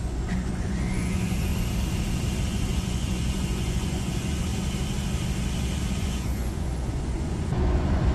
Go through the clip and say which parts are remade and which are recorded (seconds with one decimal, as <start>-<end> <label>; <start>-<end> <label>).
0.0-1.5 remade; 1.5-2.5 recorded; 2.5-4.5 remade; 4.5-5.9 recorded; 5.9-8.1 remade